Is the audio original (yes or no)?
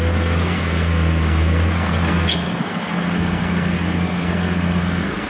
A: no